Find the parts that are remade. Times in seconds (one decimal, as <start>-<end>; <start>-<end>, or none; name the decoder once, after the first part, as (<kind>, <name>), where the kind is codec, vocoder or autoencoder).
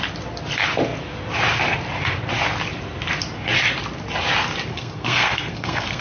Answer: 4.7-6.0 (codec, SNAC)